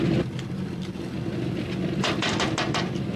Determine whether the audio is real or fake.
fake